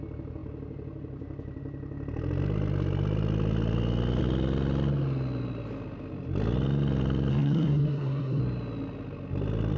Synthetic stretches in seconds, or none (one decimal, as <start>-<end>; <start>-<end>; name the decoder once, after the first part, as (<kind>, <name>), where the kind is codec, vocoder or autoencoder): 7.3-8.4 (codec, SNAC)